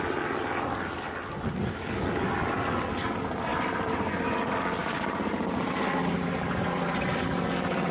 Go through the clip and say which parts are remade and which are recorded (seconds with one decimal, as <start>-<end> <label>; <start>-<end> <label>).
0.0-3.5 recorded; 3.5-4.3 remade; 4.3-4.8 recorded; 4.8-7.3 remade; 7.3-7.9 recorded